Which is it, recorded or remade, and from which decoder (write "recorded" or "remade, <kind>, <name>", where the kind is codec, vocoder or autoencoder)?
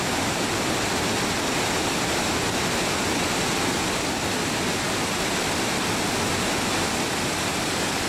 recorded